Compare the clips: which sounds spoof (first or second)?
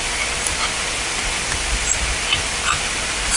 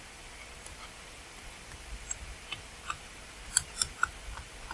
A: second